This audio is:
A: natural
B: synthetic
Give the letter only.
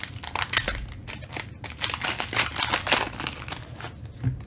A